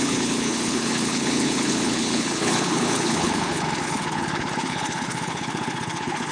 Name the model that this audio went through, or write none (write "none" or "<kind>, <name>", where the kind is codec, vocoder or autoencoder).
codec, HILCodec